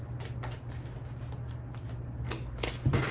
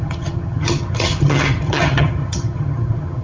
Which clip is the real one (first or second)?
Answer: first